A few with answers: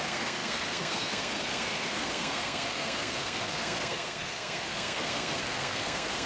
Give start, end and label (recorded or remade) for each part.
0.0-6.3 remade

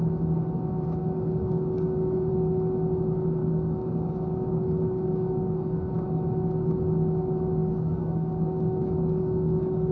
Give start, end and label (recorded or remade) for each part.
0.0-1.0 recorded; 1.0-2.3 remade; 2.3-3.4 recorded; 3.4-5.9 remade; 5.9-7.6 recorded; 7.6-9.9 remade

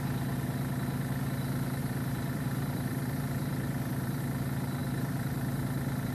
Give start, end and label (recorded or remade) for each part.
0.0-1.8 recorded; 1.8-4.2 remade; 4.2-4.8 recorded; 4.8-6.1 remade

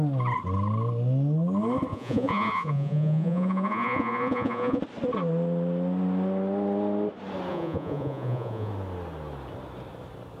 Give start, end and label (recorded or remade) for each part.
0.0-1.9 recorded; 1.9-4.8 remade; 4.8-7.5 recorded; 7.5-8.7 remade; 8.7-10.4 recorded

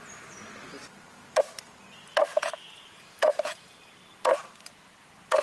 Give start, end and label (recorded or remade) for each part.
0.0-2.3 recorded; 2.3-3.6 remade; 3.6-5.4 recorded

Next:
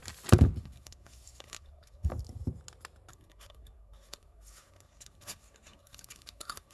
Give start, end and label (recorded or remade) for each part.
0.0-0.6 recorded; 0.6-2.1 remade; 2.1-3.1 recorded; 3.1-6.7 remade